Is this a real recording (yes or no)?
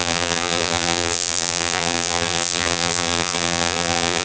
no